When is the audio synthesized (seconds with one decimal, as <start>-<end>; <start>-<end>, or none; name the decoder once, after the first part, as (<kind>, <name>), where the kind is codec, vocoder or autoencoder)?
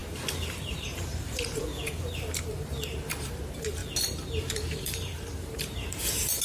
0.6-3.8 (vocoder, BigVGAN v2); 4.4-6.4